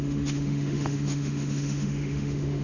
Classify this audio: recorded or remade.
remade